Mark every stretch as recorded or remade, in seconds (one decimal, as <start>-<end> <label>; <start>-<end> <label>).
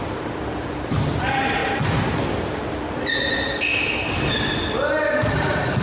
0.0-1.6 remade; 1.6-5.1 recorded; 5.1-5.8 remade